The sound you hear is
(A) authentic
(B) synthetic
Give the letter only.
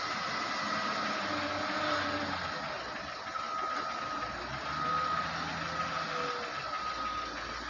A